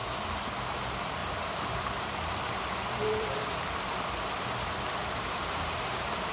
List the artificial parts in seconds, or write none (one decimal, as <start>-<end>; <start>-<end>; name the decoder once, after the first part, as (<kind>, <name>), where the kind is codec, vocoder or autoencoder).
1.2-3.5 (vocoder, BigVGAN v2); 5.0-6.3